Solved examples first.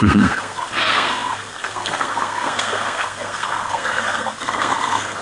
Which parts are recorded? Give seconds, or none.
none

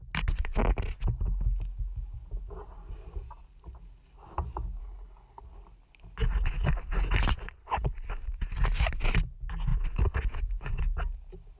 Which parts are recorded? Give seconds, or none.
0.0-4.8; 5.4-7.6; 8.1-11.6

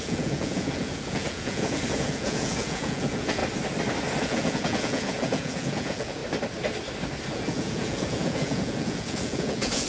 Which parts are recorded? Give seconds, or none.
3.4-4.2; 6.2-7.3

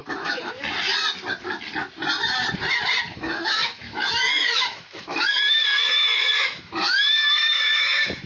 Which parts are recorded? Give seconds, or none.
0.5-3.1

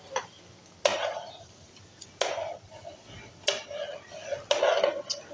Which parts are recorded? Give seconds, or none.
0.0-0.9; 1.7-5.3